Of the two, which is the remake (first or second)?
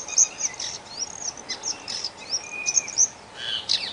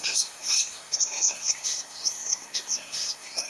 second